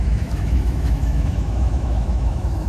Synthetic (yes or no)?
yes